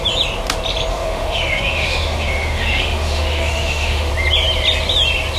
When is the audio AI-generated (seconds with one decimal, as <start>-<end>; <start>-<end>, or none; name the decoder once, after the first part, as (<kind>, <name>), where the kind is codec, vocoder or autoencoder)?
0.9-4.1 (autoencoder, DAC-VAE)